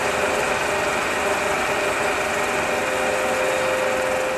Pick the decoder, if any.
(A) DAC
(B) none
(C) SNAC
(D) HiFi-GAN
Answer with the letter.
B